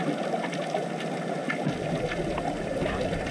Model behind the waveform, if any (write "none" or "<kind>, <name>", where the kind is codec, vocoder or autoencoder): none